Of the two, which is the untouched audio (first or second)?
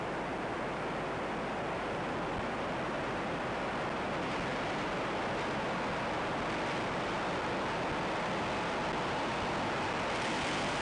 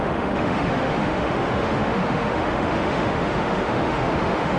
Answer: first